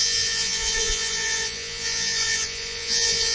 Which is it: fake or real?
fake